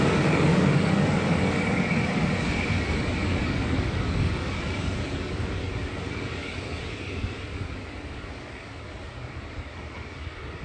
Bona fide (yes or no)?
no